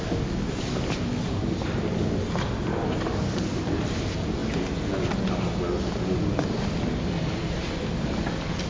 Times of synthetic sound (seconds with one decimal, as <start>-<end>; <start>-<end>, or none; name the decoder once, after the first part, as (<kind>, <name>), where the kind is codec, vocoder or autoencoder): none